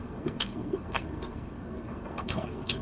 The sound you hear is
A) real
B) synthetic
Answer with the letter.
B